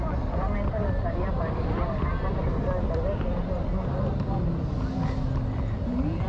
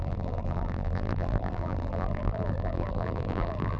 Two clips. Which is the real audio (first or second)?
first